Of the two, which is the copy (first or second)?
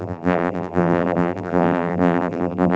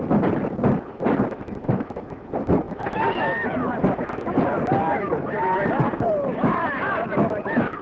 first